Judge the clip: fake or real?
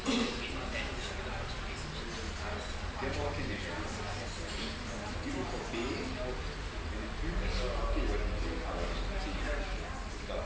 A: real